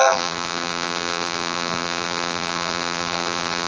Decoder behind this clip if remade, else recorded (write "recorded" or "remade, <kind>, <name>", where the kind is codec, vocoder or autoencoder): remade, vocoder, BigVGAN v2